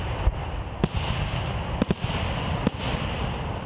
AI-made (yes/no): no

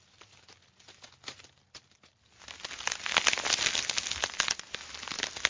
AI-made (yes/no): no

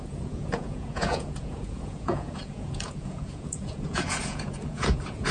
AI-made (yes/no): yes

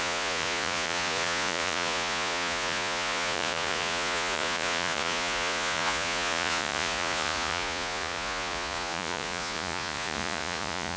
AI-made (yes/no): yes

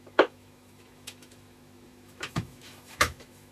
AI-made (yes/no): yes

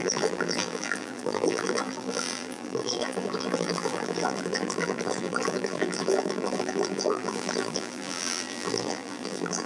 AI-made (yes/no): yes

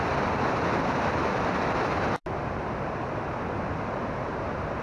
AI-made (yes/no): no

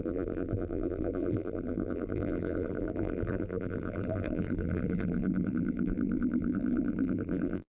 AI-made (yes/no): yes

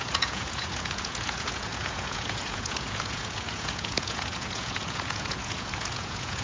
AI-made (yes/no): yes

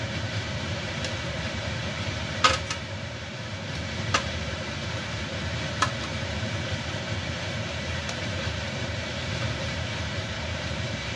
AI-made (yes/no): yes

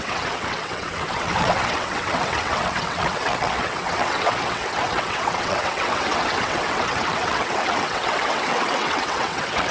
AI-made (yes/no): yes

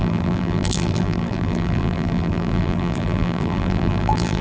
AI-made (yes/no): yes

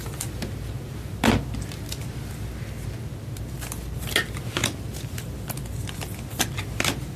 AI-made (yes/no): no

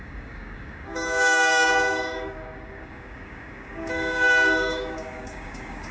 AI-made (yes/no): yes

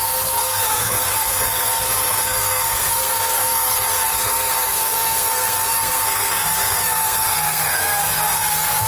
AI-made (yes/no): yes